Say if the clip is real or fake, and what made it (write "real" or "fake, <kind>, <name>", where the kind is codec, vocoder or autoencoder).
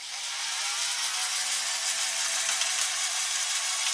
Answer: real